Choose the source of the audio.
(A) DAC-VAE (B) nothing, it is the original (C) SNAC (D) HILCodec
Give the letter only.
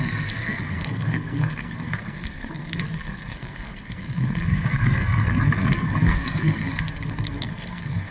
C